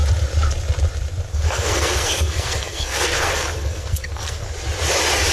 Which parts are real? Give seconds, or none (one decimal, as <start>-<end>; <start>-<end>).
0.0-1.3; 4.5-5.3